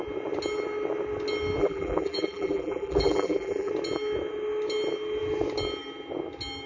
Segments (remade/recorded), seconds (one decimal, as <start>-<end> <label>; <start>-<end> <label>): 0.0-1.6 recorded; 1.6-3.7 remade; 3.7-6.7 recorded